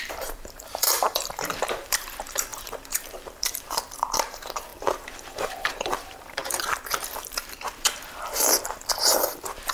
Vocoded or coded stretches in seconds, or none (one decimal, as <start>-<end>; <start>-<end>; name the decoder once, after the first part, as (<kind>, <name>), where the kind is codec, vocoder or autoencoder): 0.0-9.7 (vocoder, BigVGAN v2)